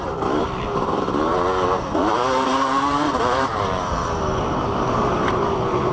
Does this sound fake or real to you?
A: fake